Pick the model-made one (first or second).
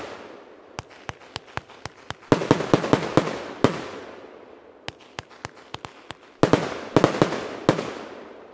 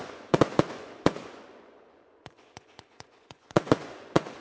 second